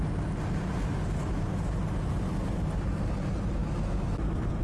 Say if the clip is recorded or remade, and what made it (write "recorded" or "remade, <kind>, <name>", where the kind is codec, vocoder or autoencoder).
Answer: recorded